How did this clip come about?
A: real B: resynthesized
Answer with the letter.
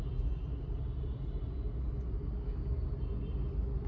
A